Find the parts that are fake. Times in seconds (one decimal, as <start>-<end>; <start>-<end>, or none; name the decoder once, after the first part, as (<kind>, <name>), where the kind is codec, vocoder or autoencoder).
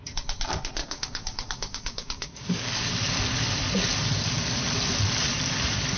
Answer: 0.8-2.9 (codec, DAC)